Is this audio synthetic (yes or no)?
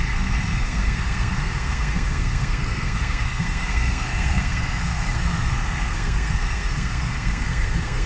yes